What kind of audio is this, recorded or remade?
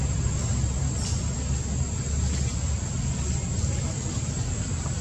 recorded